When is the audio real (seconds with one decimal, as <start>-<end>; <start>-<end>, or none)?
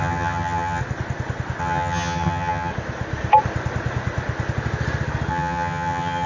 0.8-1.6; 2.7-5.3